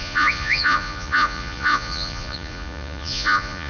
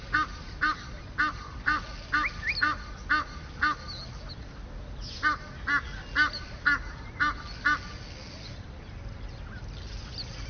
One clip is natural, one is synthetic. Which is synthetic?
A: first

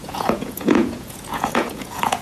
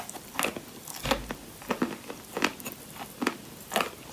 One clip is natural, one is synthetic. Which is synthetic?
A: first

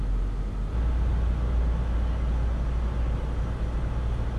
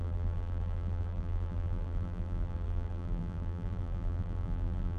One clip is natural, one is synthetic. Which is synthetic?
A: second